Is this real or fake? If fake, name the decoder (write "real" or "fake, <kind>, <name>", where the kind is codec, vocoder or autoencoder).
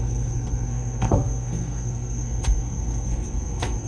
fake, codec, SNAC